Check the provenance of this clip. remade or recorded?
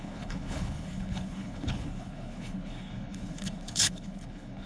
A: remade